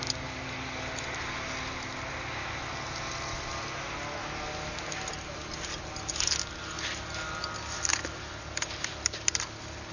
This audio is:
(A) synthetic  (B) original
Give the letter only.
B